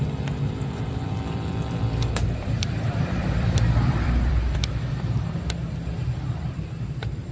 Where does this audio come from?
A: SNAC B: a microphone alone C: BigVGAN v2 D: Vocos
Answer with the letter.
C